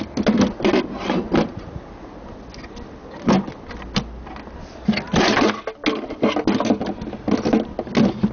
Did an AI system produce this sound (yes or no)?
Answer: no